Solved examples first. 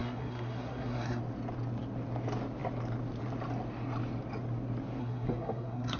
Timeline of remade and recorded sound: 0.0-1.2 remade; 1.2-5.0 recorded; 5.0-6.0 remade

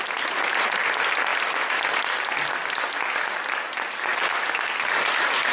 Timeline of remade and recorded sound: 0.0-5.5 recorded

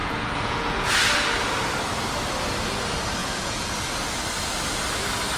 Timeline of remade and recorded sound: 0.0-0.9 remade; 0.9-3.2 recorded; 3.2-3.7 remade; 3.7-5.4 recorded

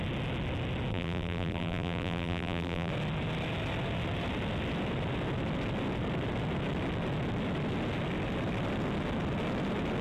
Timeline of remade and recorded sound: 0.0-0.9 recorded; 0.9-2.9 remade; 2.9-10.0 recorded